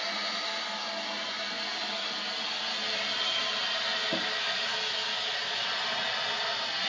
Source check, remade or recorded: recorded